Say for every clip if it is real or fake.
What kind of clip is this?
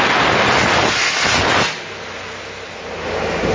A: real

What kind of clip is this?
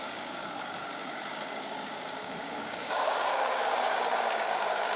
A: fake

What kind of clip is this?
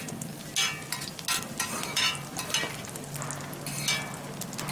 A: real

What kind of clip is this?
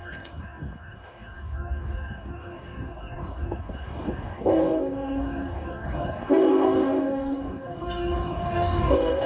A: fake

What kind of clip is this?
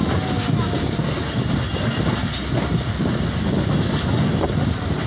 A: real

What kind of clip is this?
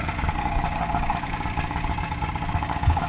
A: fake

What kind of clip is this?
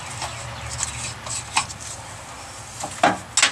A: real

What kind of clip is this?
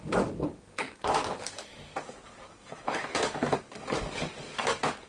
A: fake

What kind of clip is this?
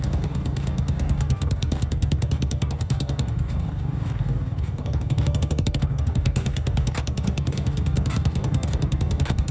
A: fake